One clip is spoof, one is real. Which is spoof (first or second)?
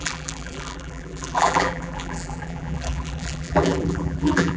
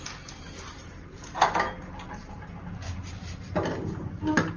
first